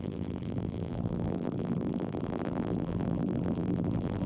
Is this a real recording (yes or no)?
no